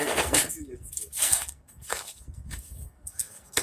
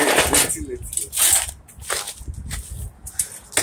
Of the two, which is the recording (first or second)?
second